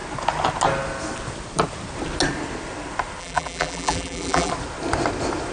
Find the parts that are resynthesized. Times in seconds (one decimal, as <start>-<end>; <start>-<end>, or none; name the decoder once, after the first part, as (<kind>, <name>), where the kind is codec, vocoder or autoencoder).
3.2-4.5 (vocoder, BigVGAN v2)